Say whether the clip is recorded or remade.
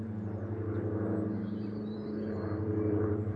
remade